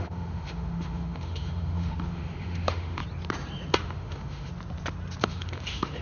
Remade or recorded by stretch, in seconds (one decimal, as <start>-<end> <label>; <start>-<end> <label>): 0.0-3.0 remade; 3.0-3.8 recorded; 3.8-4.5 remade; 4.5-5.2 recorded; 5.2-6.0 remade